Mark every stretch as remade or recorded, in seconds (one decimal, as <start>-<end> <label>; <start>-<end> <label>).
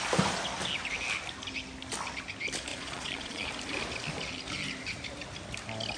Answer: 0.0-2.7 recorded; 2.7-3.5 remade; 3.5-6.0 recorded